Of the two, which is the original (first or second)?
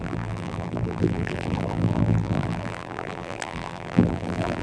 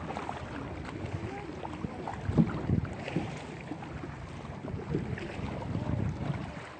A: second